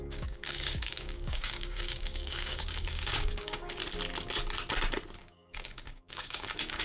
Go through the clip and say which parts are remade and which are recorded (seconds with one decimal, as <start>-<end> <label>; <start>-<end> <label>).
0.0-3.8 remade; 3.8-5.2 recorded; 5.2-6.8 remade